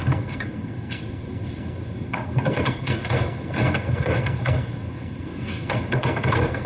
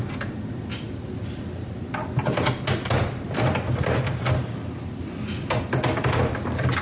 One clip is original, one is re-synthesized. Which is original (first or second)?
second